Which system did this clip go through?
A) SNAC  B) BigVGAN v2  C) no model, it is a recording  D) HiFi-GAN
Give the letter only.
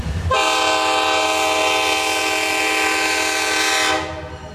C